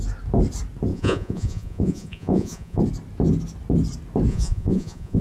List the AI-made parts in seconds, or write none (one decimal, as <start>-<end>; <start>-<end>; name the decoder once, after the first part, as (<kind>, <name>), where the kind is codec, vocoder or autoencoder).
0.9-2.8 (vocoder, Vocos); 4.3-5.2